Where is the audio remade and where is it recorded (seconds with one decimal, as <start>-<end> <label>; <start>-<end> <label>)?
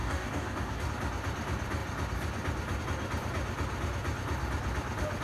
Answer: 0.0-0.9 remade; 0.9-5.2 recorded